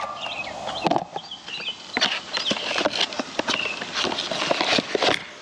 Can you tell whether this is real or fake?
real